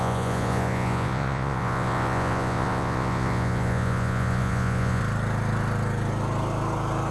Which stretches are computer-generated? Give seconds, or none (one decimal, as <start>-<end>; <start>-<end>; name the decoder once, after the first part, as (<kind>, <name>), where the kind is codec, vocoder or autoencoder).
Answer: 0.0-5.0 (vocoder, Vocos)